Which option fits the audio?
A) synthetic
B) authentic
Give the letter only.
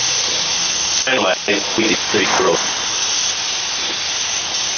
B